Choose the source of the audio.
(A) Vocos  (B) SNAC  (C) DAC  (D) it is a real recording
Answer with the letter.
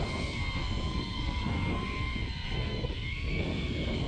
B